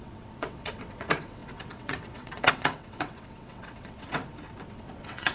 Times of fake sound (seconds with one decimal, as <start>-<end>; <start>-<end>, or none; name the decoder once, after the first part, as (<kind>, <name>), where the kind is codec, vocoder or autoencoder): 0.0-4.2 (vocoder, WaveNeXt); 4.7-5.3